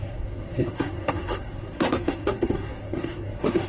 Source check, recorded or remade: remade